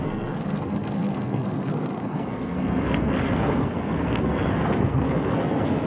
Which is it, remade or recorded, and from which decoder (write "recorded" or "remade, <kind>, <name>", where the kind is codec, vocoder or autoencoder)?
remade, codec, SNAC